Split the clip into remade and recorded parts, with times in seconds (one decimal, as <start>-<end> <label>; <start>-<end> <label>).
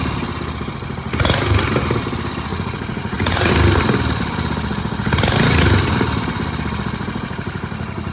0.0-2.5 recorded; 2.5-3.5 remade; 3.5-8.1 recorded